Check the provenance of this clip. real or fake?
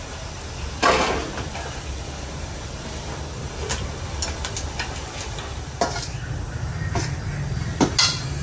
real